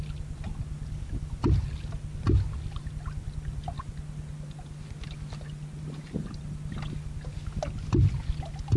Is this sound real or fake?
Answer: real